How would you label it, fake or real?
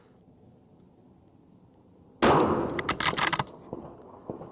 real